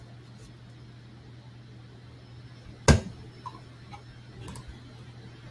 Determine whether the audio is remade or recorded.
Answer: recorded